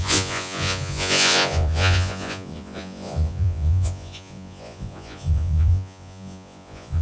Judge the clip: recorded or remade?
remade